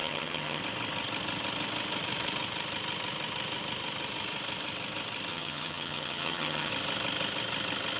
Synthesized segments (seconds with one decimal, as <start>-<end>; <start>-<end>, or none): 0.0-0.6; 5.3-6.7